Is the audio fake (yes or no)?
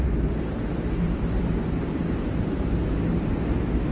yes